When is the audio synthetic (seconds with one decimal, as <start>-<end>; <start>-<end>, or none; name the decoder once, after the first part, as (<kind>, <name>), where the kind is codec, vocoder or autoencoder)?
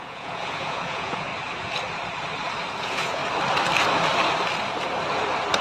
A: 0.0-1.3 (vocoder, Vocos); 2.8-3.2